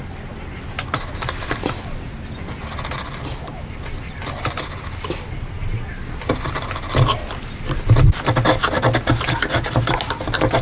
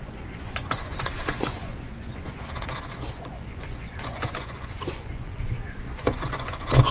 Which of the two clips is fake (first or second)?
second